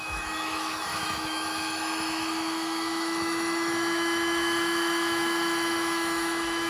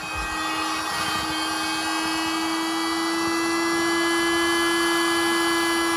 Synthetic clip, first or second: first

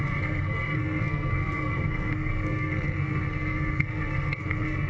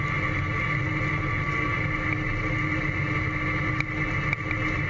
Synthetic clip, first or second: first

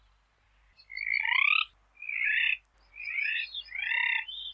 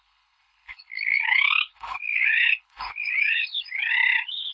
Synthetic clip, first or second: second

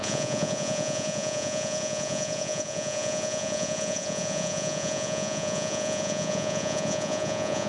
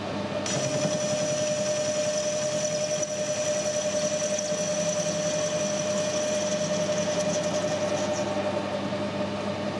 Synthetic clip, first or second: first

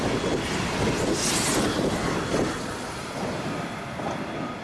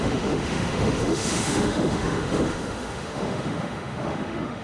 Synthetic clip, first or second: second